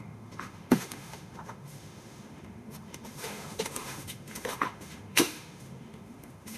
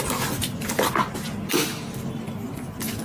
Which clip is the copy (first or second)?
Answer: first